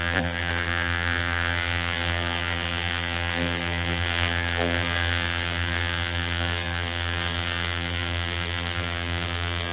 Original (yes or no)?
no